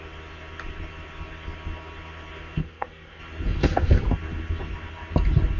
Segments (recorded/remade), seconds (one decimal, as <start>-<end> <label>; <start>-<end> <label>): 0.0-2.6 recorded; 2.6-3.2 remade; 3.2-3.6 recorded; 3.6-4.1 remade; 4.1-5.6 recorded